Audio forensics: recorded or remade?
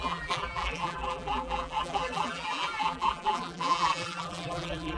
remade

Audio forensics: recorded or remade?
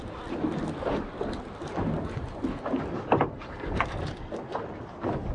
recorded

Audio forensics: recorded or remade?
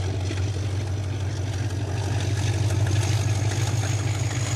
recorded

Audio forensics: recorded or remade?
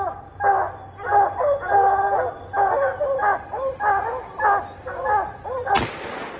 recorded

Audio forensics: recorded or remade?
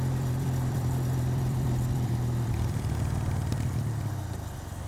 remade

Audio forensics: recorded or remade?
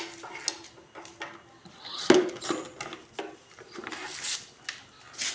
recorded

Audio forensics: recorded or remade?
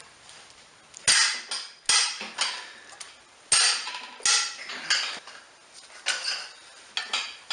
recorded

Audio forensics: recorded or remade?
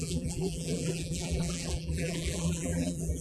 remade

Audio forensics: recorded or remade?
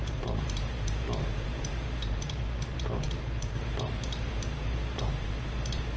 remade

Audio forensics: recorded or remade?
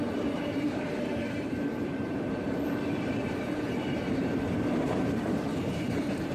remade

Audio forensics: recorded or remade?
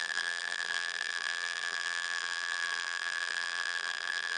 remade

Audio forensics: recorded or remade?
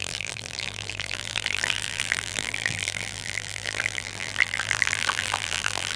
remade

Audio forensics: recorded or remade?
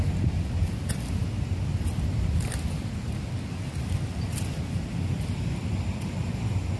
recorded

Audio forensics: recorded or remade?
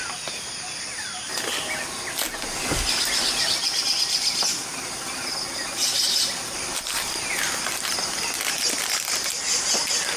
recorded